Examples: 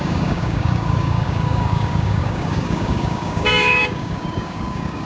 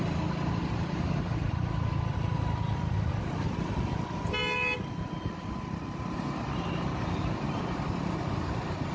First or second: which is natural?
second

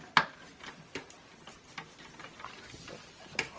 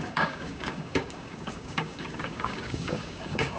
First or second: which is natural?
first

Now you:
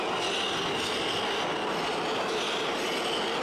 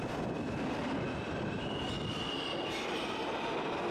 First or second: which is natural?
first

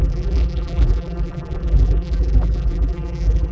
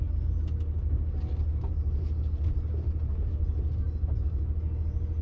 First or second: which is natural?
second